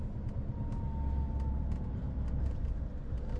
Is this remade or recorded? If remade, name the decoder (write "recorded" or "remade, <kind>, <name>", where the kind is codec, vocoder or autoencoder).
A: recorded